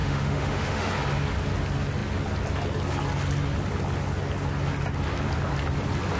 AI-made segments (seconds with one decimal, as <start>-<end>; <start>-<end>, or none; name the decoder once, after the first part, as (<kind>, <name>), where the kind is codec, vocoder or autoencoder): 0.0-0.9 (autoencoder, DAC-VAE)